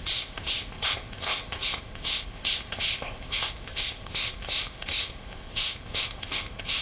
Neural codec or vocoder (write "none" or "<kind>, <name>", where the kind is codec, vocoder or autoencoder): codec, ZipCodec